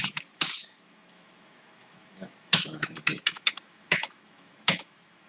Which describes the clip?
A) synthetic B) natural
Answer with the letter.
A